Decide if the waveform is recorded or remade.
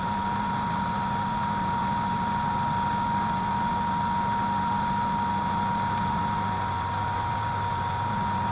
recorded